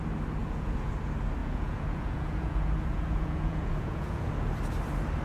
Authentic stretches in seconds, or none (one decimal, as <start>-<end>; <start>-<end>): 0.0-0.4; 0.9-1.4; 4.5-5.2